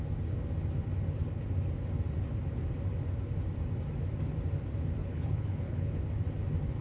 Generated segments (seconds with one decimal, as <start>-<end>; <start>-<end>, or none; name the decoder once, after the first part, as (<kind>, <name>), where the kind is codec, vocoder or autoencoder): 5.0-6.0 (codec, HILCodec)